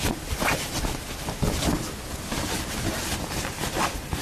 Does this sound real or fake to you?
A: real